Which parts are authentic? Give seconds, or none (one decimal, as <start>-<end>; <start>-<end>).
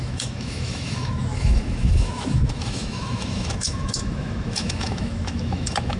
none